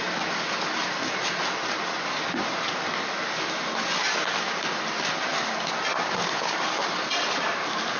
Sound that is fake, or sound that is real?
real